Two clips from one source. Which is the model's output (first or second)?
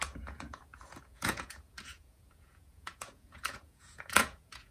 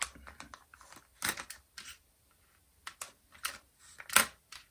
first